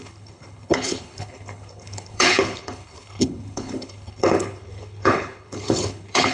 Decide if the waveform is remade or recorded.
remade